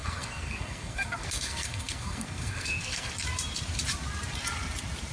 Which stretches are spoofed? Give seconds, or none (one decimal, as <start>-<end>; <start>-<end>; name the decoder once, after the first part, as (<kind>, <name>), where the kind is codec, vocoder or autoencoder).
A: 0.0-3.1 (codec, SNAC)